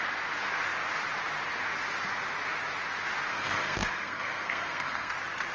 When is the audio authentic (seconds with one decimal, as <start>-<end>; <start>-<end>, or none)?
0.0-3.3; 5.1-5.5

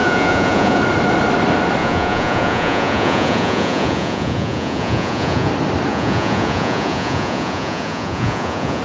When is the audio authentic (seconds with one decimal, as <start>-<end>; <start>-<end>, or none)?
0.8-1.8; 5.5-5.9

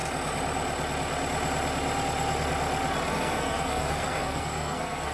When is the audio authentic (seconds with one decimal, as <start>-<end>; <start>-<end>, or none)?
0.0-3.1

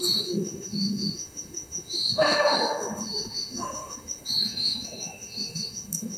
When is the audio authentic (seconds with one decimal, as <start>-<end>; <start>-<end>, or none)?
none

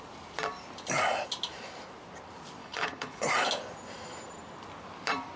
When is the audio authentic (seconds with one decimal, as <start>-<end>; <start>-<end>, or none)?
0.0-2.6; 3.2-5.4

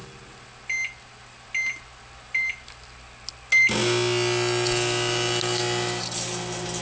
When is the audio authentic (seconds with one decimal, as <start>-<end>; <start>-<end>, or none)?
0.0-6.8